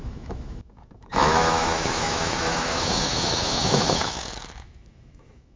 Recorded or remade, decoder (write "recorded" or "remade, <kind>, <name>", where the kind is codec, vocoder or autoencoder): remade, autoencoder, DAC-VAE